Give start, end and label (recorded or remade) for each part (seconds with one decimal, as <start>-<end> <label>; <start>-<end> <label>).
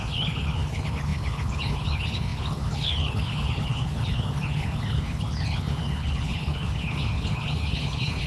0.0-8.3 remade